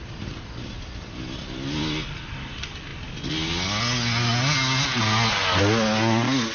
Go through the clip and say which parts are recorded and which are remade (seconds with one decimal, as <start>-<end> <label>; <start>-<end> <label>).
0.0-6.5 recorded